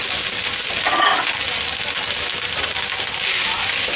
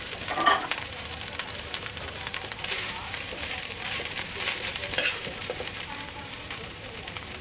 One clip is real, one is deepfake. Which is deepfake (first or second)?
second